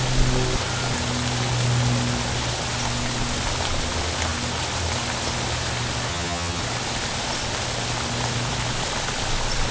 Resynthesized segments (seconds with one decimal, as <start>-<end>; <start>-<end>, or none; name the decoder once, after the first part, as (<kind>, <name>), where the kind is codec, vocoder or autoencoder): 6.1-6.6 (vocoder, HiFi-GAN)